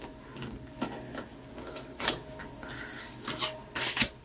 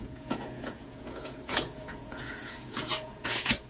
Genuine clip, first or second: first